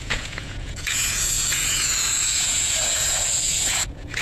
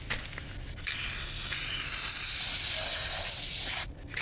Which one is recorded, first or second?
second